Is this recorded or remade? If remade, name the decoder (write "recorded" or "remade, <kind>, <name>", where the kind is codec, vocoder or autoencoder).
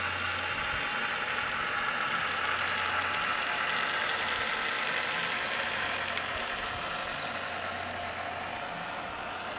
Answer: recorded